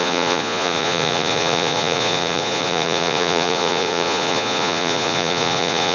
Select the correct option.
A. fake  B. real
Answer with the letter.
A